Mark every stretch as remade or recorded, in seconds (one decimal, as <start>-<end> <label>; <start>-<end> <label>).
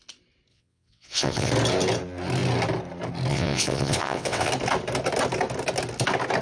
0.0-0.5 recorded; 0.5-1.5 remade; 1.5-3.3 recorded; 3.3-4.5 remade; 4.5-6.4 recorded